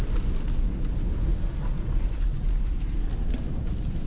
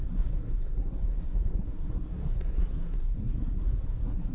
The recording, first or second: first